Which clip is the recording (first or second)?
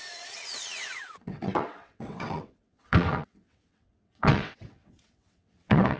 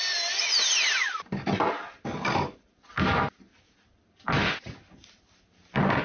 second